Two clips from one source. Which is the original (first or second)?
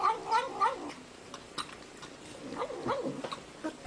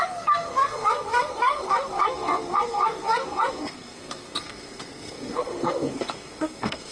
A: first